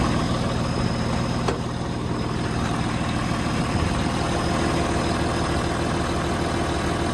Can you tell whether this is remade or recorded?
recorded